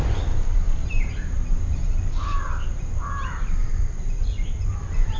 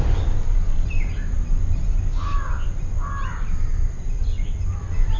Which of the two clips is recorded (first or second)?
second